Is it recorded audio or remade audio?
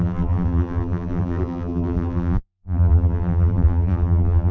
remade